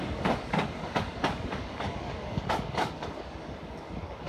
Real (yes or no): no